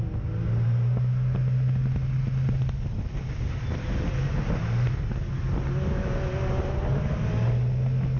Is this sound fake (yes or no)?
no